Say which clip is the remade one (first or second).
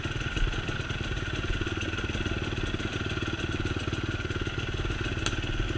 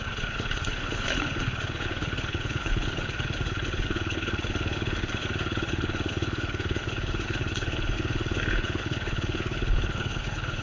second